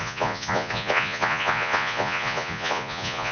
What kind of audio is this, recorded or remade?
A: remade